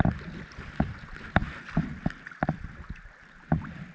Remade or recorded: recorded